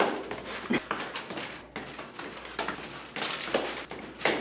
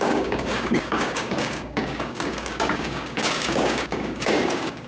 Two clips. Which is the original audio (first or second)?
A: first